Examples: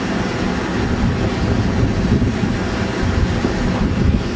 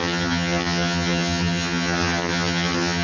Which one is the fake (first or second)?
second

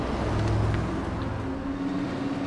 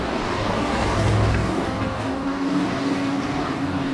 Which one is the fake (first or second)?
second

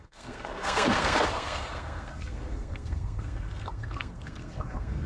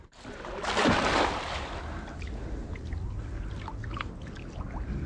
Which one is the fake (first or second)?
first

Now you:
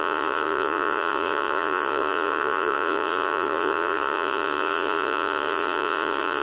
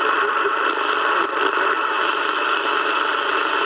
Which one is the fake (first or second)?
first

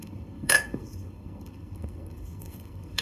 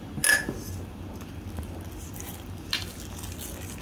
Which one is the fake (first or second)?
first